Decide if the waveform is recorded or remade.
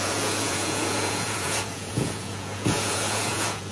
remade